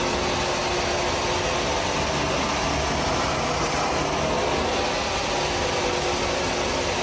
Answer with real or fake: real